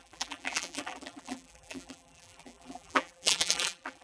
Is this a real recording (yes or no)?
no